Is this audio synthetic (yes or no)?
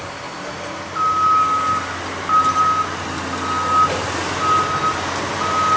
no